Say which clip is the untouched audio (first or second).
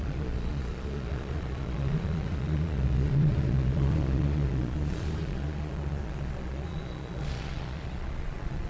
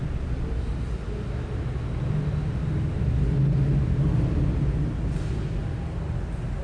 second